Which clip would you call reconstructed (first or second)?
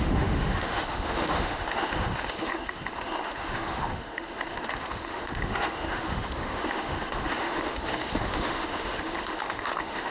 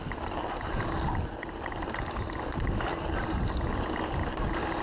first